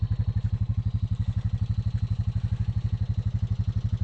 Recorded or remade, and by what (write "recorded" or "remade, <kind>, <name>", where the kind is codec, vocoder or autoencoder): recorded